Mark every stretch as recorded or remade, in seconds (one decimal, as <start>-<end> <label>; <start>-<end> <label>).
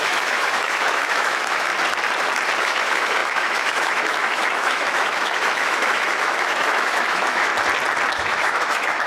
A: 0.0-1.7 remade; 1.7-2.6 recorded; 2.6-7.5 remade; 7.5-8.1 recorded; 8.1-9.1 remade